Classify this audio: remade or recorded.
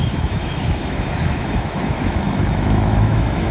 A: remade